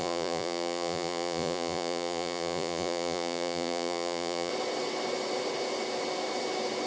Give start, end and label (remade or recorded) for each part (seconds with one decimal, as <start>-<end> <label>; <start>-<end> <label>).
0.0-4.5 remade; 4.5-6.9 recorded